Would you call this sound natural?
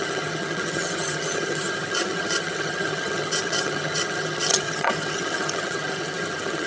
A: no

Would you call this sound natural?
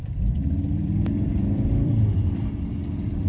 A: no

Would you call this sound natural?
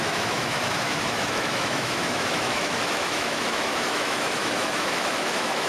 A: no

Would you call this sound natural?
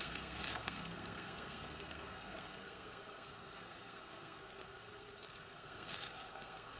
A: no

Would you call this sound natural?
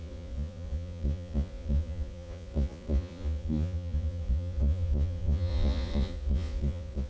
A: no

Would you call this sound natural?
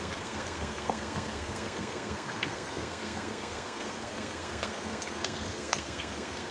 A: no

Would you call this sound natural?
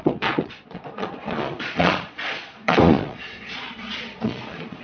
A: no